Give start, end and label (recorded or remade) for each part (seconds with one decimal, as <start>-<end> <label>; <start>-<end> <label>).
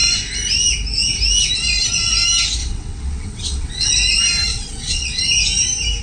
0.0-2.6 recorded; 2.6-3.9 remade; 3.9-4.5 recorded; 4.5-5.2 remade; 5.2-6.0 recorded